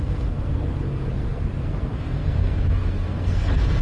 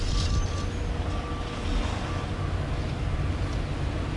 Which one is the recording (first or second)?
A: second